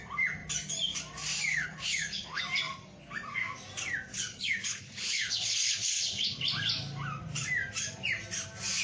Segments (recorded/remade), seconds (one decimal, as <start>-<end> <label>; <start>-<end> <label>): 0.0-1.5 recorded; 1.5-2.4 remade; 2.4-4.1 recorded; 4.1-6.4 remade; 6.4-8.8 recorded